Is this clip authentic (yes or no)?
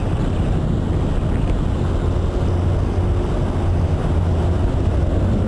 yes